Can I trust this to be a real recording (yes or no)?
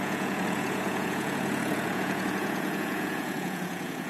no